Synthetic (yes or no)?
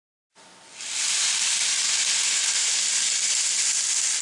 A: no